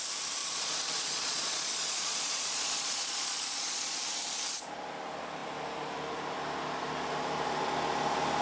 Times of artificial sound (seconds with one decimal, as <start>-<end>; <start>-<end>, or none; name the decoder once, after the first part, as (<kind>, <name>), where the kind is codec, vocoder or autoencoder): 0.4-3.9 (vocoder, Vocos)